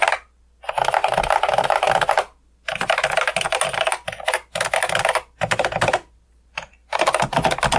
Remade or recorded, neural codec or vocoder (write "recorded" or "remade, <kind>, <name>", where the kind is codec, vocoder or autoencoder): recorded